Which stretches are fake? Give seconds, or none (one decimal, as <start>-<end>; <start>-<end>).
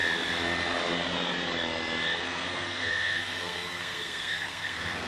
2.2-5.1